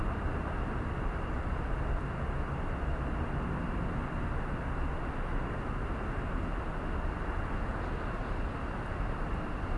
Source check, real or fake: real